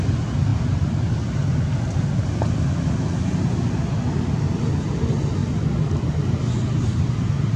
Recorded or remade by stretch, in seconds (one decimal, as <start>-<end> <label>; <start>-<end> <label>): 0.0-7.6 recorded